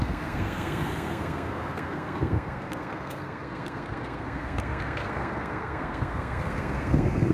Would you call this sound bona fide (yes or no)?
no